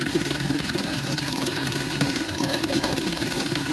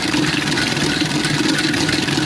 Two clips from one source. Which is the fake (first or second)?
first